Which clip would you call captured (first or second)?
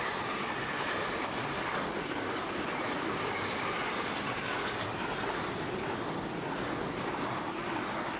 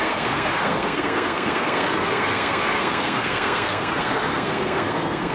first